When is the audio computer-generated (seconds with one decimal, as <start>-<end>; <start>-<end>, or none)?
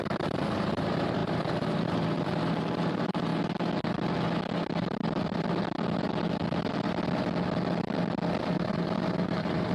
0.0-3.3; 8.4-9.7